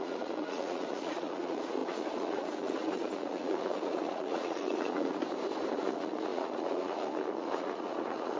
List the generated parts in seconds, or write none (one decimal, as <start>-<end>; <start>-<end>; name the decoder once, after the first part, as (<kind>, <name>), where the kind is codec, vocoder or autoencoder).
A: 0.0-5.2 (vocoder, Vocos); 5.7-8.4